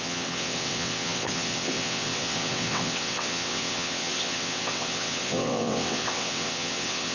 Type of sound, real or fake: fake